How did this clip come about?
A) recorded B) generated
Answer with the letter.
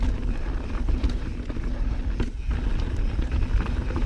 A